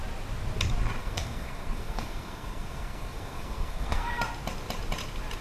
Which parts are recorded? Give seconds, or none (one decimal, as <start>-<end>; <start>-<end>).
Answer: 0.0-1.0; 4.2-5.4